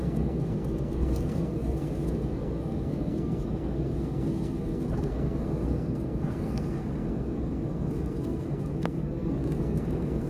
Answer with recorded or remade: remade